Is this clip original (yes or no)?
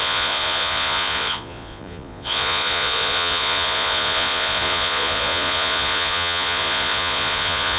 no